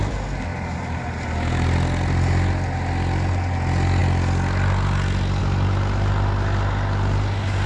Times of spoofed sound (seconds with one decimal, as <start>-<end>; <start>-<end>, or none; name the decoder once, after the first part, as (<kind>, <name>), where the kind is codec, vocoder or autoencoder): none